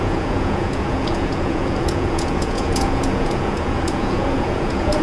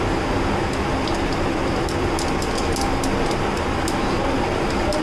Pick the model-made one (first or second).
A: first